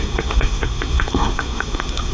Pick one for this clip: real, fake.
fake